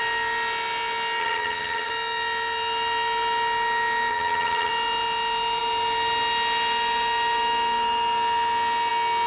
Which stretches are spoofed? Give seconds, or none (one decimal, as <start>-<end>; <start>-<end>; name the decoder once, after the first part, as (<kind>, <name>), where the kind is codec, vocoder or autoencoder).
1.2-1.9 (vocoder, HiFi-GAN); 4.1-4.7